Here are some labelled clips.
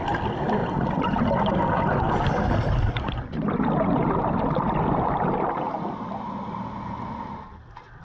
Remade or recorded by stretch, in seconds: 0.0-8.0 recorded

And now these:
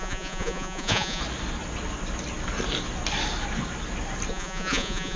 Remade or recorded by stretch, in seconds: 0.0-1.2 remade; 1.2-4.3 recorded; 4.3-5.2 remade